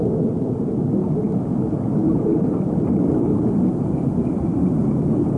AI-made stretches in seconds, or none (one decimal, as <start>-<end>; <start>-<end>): none